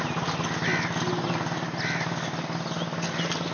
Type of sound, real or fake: real